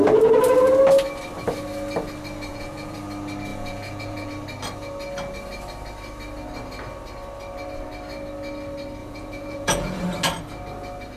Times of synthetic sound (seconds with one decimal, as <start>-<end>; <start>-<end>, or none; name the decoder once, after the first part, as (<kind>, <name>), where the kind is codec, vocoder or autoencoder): 2.5-3.0 (vocoder, Vocos); 3.5-4.3; 9.0-10.0